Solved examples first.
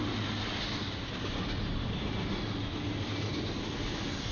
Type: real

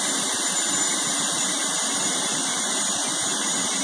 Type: real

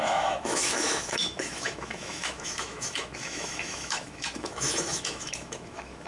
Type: fake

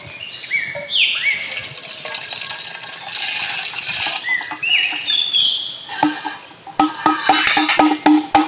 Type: real